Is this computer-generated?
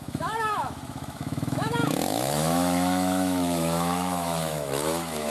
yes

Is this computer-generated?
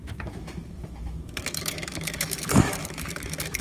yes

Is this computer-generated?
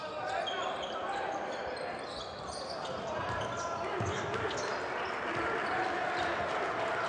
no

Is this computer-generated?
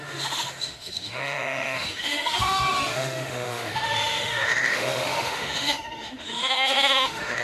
yes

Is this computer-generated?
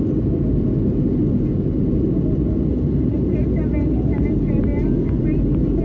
no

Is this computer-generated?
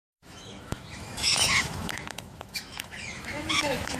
yes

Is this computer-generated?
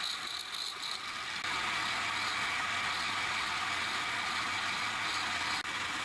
no